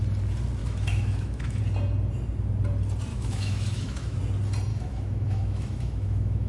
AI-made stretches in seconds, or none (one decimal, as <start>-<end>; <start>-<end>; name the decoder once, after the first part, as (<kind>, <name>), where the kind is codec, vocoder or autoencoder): 0.6-1.6 (autoencoder, DAC-VAE); 3.1-4.2; 4.7-6.5